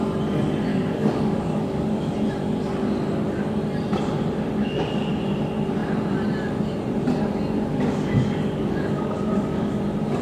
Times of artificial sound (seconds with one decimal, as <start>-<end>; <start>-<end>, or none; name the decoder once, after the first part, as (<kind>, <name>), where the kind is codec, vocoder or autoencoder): 0.7-2.1 (codec, DAC); 4.6-5.2; 7.7-9.7